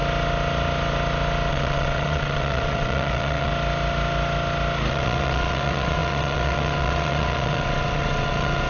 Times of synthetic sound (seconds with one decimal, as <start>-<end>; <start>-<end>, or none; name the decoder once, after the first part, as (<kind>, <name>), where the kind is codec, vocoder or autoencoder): 1.5-3.5 (vocoder, WaveNeXt); 4.9-8.7